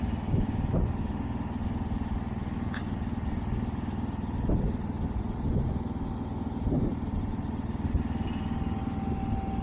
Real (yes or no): yes